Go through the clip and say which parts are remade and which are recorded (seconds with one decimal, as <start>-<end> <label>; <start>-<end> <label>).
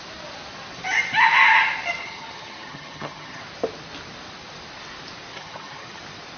0.0-2.0 recorded; 2.0-3.4 remade; 3.4-5.3 recorded; 5.3-6.0 remade; 6.0-6.4 recorded